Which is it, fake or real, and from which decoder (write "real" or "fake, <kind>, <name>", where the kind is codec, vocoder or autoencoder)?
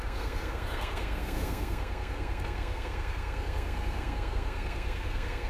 fake, codec, SNAC